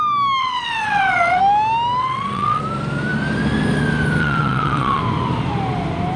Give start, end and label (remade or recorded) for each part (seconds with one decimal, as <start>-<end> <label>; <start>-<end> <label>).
0.0-0.4 recorded; 0.4-1.4 remade; 1.4-2.0 recorded; 2.0-2.6 remade; 2.6-4.2 recorded; 4.2-5.0 remade; 5.0-6.2 recorded